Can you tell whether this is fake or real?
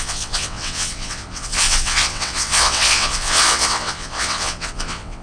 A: fake